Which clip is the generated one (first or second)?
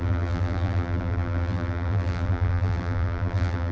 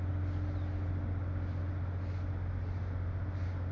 first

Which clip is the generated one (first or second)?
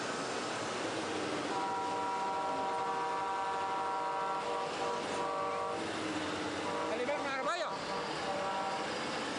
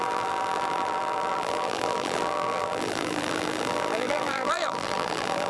second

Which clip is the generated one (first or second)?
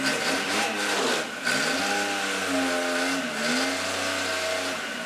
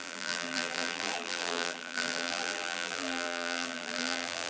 second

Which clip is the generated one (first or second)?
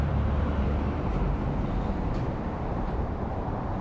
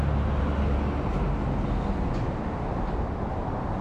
first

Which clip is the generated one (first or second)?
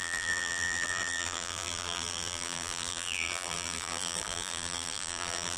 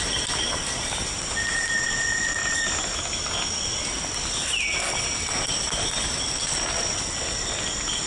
first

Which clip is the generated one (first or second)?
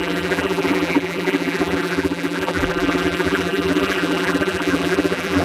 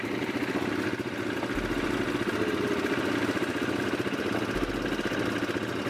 first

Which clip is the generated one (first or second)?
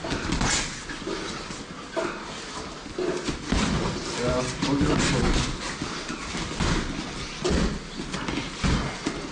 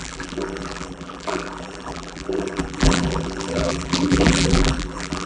second